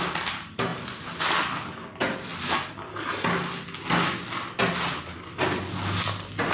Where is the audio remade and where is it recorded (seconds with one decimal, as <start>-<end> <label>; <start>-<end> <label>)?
0.0-6.5 recorded